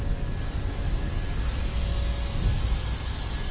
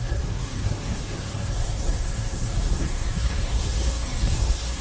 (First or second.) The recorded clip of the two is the first